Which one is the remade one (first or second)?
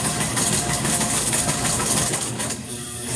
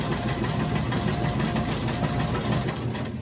first